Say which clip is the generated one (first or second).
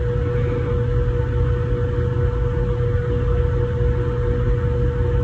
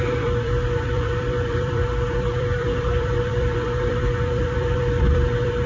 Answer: second